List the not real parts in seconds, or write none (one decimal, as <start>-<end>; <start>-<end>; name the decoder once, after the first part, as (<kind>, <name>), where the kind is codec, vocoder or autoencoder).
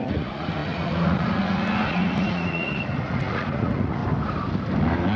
0.0-4.0 (vocoder, Vocos)